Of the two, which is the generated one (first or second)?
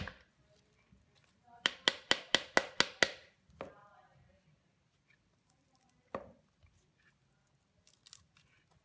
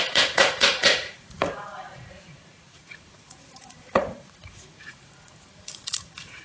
second